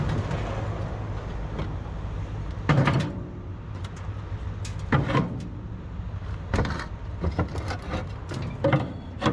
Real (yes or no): yes